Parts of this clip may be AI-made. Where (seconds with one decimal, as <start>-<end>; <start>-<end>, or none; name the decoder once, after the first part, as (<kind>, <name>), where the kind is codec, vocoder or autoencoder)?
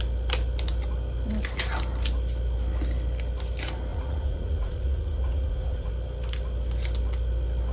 3.9-5.9 (vocoder, Vocos)